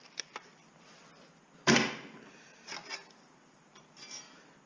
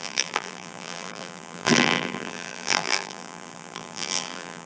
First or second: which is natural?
first